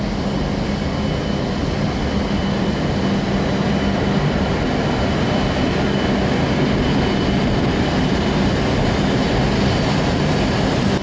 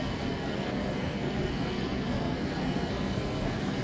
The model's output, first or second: second